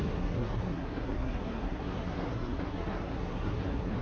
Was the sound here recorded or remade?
remade